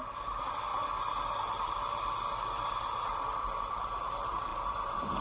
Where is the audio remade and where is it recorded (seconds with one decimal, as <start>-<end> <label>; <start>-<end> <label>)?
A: 0.0-0.7 remade; 0.7-3.6 recorded; 3.6-5.2 remade